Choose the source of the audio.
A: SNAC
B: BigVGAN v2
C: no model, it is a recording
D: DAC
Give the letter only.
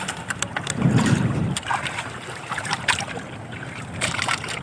B